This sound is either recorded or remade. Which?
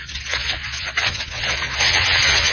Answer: remade